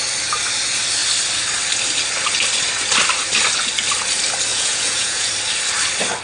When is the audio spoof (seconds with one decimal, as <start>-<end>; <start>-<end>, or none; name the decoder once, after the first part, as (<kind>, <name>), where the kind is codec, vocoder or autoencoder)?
4.5-5.3 (vocoder, Vocos)